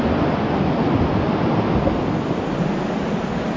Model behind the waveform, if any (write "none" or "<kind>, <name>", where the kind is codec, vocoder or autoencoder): none